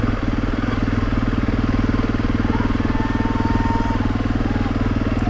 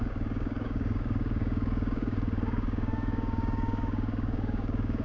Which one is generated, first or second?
second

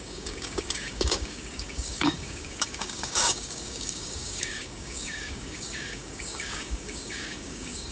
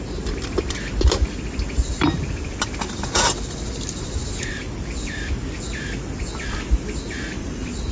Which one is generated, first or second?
first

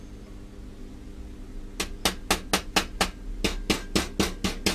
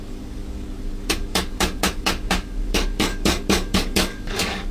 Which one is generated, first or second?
second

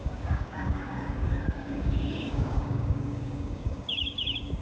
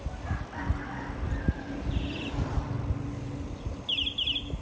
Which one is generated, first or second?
first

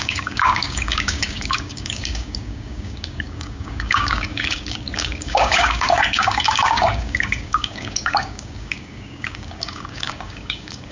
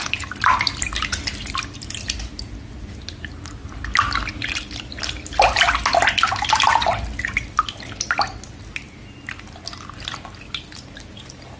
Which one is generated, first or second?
first